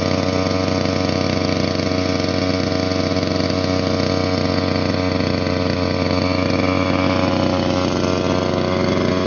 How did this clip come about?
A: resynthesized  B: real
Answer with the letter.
B